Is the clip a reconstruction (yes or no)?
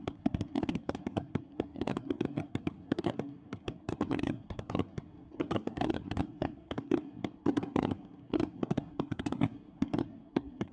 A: yes